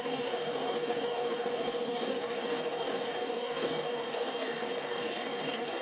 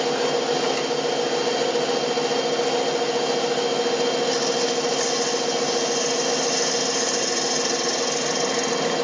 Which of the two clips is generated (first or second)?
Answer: first